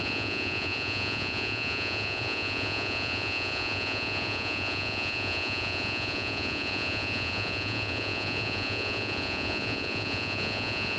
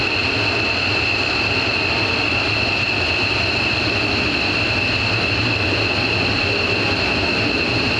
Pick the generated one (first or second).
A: first